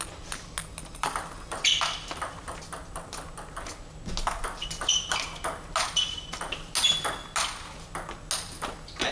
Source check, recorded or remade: recorded